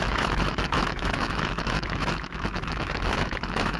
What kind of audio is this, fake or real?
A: fake